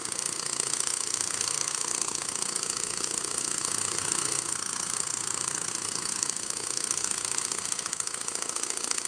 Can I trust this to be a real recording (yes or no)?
no